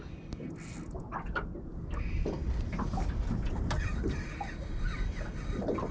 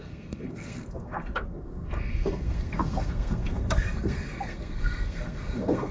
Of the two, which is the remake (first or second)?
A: second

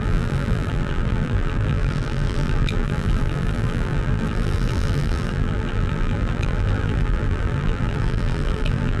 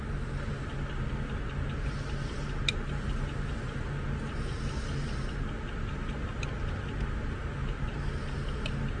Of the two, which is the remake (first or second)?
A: first